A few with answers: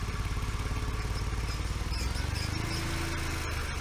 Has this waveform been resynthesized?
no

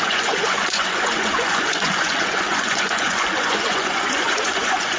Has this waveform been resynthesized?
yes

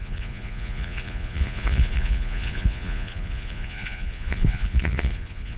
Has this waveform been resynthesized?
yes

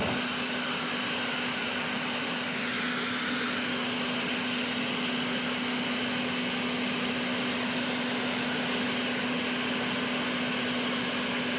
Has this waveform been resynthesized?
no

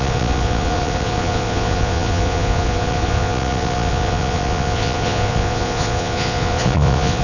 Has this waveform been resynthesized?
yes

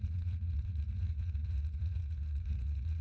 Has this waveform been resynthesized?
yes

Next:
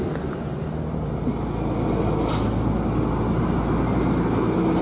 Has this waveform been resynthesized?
no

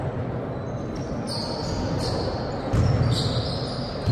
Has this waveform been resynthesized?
no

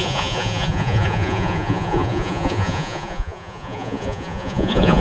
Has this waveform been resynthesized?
yes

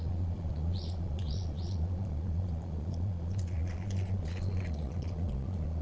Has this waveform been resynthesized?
yes